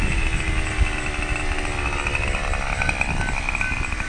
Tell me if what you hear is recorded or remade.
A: recorded